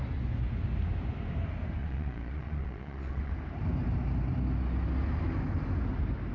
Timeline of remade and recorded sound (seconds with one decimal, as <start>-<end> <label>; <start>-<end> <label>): 0.0-1.8 recorded; 1.8-3.3 remade; 3.3-6.3 recorded